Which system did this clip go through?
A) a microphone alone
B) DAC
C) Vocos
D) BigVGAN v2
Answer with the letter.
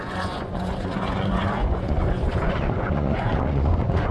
C